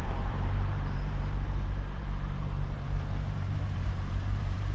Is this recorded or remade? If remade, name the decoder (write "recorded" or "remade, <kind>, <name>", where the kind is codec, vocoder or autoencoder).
remade, vocoder, BigVGAN v2